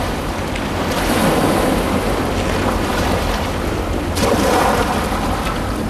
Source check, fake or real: real